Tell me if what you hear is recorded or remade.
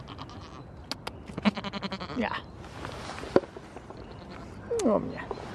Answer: recorded